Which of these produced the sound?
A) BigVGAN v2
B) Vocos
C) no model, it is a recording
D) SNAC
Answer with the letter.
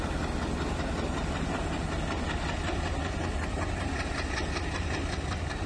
C